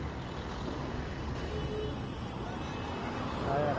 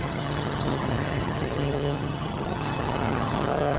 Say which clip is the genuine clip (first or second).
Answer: first